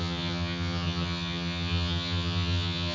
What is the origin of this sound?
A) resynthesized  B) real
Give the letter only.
A